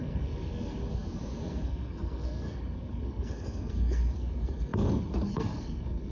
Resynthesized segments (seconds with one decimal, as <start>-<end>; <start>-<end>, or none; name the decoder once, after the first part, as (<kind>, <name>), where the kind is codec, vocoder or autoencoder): 0.0-6.1 (codec, SNAC)